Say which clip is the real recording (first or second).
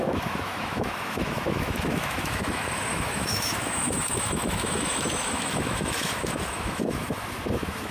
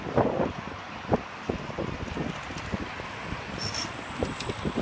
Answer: second